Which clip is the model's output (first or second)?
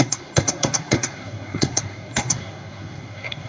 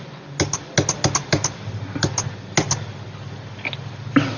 first